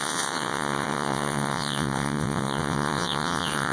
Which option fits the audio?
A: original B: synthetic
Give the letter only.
B